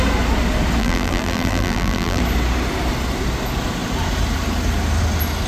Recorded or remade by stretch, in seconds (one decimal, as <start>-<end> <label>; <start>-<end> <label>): 0.0-0.8 recorded; 0.8-2.2 remade; 2.2-5.5 recorded